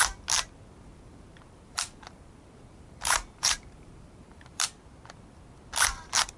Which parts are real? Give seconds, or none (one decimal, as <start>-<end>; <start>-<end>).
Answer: 0.0-0.9; 4.7-6.4